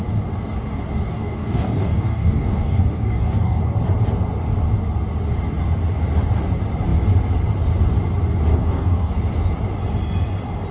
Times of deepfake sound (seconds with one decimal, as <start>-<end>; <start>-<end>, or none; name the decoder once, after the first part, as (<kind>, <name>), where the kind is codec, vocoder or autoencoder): 1.1-3.6 (codec, DAC); 8.5-9.1

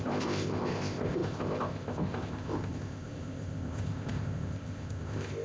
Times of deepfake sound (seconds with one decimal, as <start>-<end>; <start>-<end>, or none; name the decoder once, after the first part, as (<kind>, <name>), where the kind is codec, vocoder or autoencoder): 0.0-5.4 (codec, ZipCodec)

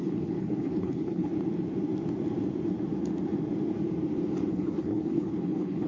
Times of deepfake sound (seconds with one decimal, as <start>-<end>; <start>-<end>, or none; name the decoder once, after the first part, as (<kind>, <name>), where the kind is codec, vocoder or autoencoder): 0.0-1.3 (codec, HILCodec); 4.5-5.9

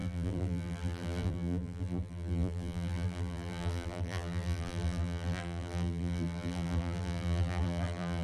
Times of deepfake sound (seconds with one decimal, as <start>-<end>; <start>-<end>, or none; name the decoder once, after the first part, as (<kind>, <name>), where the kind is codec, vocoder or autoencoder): 0.0-8.2 (vocoder, BigVGAN v2)

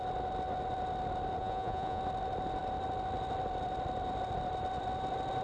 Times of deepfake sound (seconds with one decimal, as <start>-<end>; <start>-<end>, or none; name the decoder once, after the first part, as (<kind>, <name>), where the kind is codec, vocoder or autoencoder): 1.4-2.0 (vocoder, Vocos)

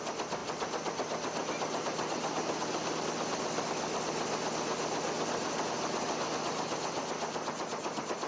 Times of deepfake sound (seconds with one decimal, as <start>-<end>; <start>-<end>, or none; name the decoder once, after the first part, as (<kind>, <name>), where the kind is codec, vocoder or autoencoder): none

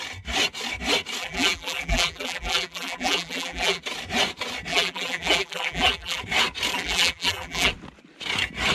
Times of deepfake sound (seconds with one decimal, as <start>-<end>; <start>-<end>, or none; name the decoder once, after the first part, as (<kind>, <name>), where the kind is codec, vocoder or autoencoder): 1.2-3.8 (vocoder, BigVGAN v2); 4.7-6.2; 6.7-7.7

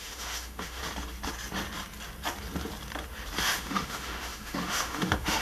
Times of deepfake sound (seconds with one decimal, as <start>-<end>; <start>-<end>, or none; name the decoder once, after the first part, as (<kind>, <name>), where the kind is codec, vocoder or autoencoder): 0.0-0.8 (autoencoder, DAC-VAE); 3.4-5.4